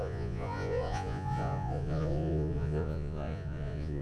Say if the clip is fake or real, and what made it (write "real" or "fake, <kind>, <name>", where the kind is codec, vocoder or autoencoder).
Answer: fake, vocoder, Vocos